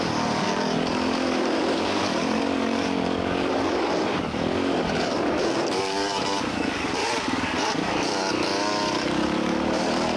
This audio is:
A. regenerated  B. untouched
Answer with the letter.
A